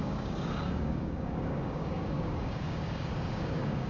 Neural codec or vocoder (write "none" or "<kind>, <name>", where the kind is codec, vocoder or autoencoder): codec, DAC